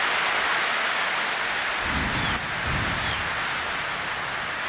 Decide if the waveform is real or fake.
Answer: real